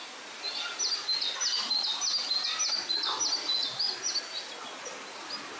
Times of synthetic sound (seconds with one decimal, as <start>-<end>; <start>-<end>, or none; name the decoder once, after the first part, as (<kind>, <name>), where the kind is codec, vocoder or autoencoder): none